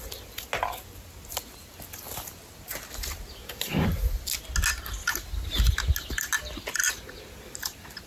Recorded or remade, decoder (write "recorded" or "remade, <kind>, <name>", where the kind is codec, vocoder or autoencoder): recorded